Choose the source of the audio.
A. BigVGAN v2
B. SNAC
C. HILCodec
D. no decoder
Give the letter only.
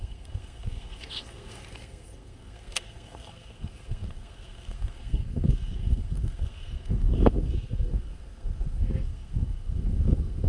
B